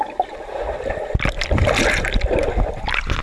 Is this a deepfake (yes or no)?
no